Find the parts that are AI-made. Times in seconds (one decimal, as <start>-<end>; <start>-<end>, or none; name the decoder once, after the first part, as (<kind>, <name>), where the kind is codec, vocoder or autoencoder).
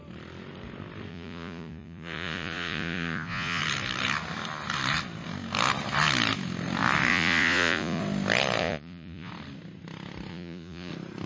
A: 1.1-3.6 (vocoder, Vocos); 7.1-8.0; 8.6-9.3; 10.3-10.9